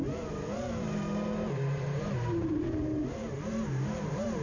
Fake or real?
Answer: fake